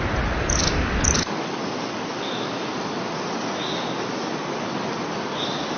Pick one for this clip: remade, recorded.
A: recorded